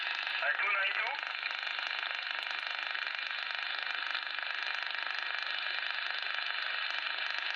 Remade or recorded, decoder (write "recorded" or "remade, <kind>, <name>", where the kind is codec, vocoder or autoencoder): recorded